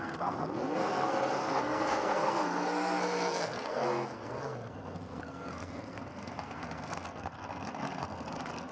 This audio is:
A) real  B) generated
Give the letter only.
B